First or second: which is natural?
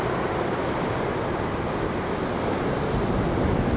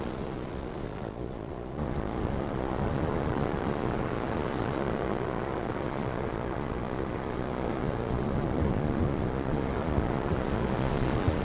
first